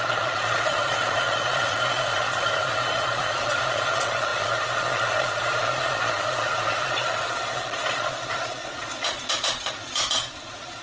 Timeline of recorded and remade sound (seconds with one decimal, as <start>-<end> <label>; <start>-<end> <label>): 0.0-10.8 remade